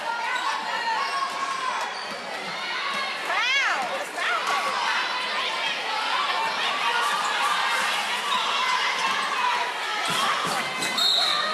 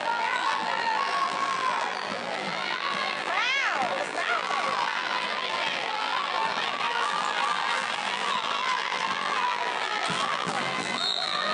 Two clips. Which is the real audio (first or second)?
first